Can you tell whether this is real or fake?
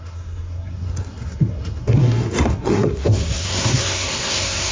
fake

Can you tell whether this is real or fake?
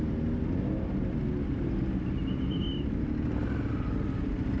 real